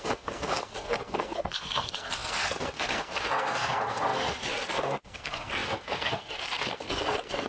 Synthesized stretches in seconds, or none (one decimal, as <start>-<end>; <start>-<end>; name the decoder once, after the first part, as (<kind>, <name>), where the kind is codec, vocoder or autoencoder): 0.0-7.5 (codec, SNAC)